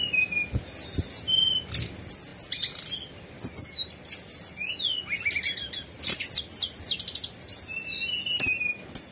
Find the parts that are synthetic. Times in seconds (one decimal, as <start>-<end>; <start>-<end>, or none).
none